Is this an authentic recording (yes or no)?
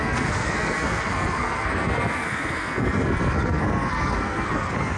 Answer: no